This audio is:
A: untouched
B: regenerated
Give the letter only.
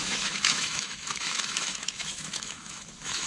B